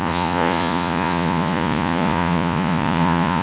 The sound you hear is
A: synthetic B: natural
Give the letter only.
A